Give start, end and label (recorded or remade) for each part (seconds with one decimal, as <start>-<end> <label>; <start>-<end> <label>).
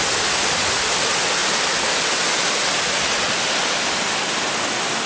0.0-5.1 recorded